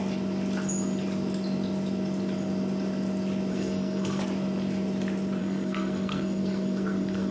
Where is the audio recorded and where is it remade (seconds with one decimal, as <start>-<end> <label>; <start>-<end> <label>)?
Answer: 0.0-3.5 recorded; 3.5-4.2 remade; 4.2-5.4 recorded; 5.4-7.3 remade